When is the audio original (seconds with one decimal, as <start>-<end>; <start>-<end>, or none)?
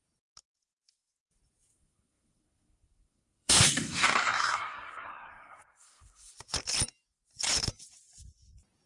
0.0-1.7; 6.3-8.9